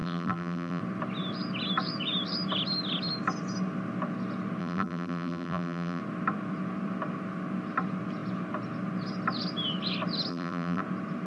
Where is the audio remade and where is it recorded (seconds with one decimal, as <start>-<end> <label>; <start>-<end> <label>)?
0.0-0.8 remade; 0.8-4.6 recorded; 4.6-6.0 remade; 6.0-10.3 recorded; 10.3-10.8 remade; 10.8-11.3 recorded